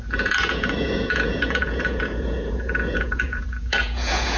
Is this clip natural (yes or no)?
no